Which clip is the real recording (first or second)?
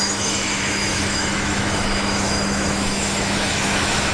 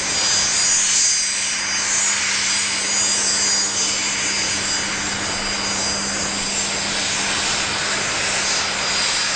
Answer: second